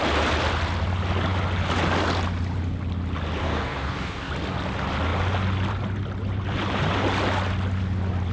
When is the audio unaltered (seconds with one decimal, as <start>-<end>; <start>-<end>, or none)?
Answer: 0.0-3.4; 4.3-8.3